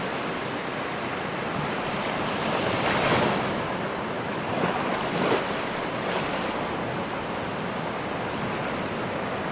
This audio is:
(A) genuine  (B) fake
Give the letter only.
A